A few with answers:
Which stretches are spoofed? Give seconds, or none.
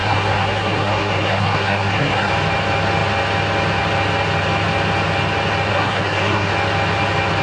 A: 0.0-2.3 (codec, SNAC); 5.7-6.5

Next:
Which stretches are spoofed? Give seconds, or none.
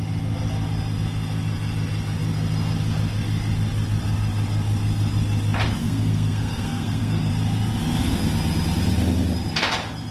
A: 5.8-7.3 (codec, SNAC)